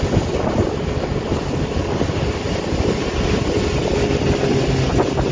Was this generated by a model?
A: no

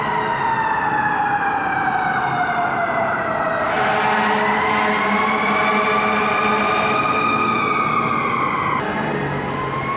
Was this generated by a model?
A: no